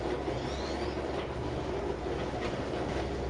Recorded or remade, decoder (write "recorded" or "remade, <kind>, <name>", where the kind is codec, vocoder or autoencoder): recorded